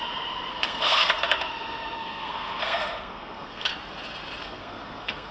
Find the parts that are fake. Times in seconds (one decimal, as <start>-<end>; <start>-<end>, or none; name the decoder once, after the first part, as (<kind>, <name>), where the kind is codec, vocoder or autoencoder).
0.5-3.7 (codec, SNAC); 4.4-5.3